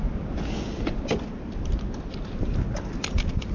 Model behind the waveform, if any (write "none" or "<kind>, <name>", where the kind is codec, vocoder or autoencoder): none